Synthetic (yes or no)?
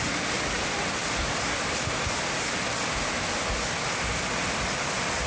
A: no